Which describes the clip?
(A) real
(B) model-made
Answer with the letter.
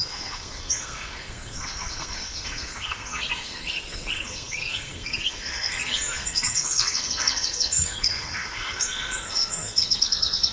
B